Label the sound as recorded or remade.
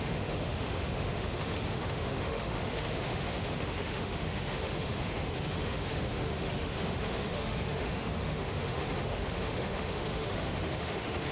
remade